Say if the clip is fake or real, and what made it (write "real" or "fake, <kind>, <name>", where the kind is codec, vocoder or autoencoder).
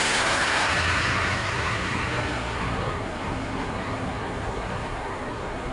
fake, codec, SNAC